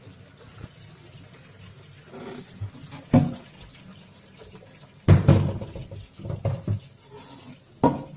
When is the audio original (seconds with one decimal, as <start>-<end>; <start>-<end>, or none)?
0.0-8.2